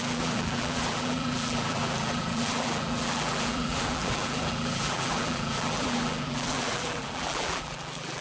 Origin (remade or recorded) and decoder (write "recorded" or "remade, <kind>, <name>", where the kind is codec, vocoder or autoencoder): remade, vocoder, BigVGAN v2